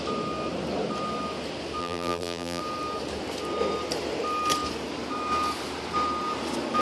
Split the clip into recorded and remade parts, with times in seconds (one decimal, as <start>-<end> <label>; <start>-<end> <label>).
0.0-1.8 recorded; 1.8-2.6 remade; 2.6-6.8 recorded